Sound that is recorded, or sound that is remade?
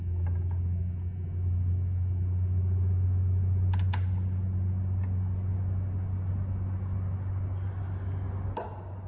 recorded